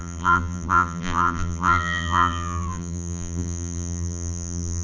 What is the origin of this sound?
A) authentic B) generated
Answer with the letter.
B